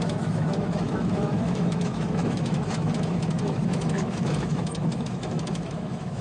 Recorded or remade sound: remade